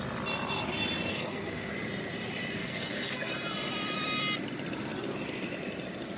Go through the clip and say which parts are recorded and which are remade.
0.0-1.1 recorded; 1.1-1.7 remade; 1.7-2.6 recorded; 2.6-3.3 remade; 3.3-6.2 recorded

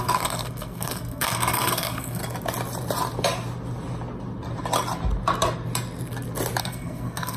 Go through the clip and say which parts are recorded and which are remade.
0.0-2.2 remade; 2.2-6.6 recorded; 6.6-7.4 remade

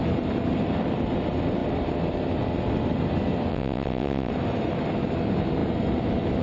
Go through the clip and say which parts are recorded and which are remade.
0.0-3.5 recorded; 3.5-4.3 remade; 4.3-6.4 recorded

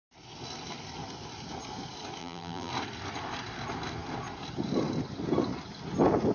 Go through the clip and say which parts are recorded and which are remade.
0.0-2.2 recorded; 2.2-2.7 remade; 2.7-6.3 recorded

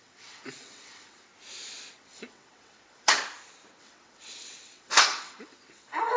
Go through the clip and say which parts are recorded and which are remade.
0.0-1.3 remade; 1.3-1.9 recorded; 1.9-3.2 remade; 3.2-3.8 recorded; 3.8-6.2 remade

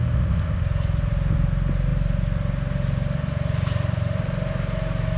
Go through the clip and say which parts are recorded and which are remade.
0.0-0.6 remade; 0.6-5.2 recorded

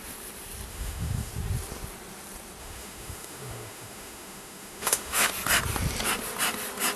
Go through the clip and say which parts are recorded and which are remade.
0.0-0.7 recorded; 0.7-1.3 remade; 1.3-2.6 recorded; 2.6-5.3 remade; 5.3-7.0 recorded